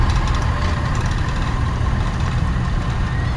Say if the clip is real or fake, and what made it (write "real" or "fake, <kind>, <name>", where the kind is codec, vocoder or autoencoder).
real